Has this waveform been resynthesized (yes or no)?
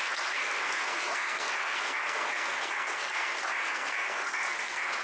yes